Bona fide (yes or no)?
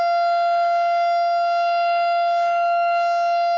no